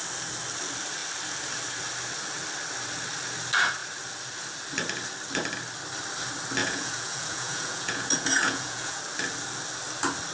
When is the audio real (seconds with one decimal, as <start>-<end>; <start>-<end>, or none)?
0.0-6.6; 9.0-10.3